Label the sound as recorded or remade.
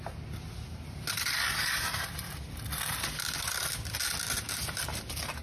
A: recorded